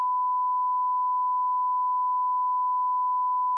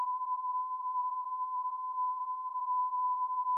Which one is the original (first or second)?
first